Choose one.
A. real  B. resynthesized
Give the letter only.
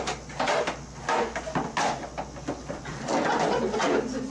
A